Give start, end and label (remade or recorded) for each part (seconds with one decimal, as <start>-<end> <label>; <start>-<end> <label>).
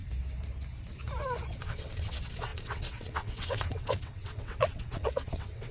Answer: 0.0-1.6 recorded; 1.6-5.7 remade